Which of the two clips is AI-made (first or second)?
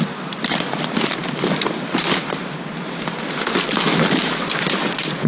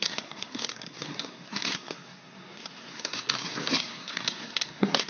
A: second